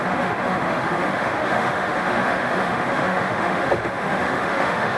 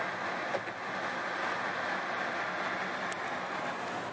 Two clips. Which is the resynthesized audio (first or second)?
first